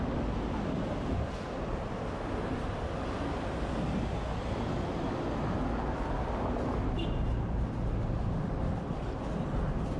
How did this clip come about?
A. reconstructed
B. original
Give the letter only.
B